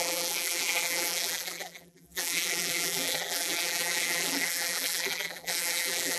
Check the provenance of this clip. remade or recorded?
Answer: remade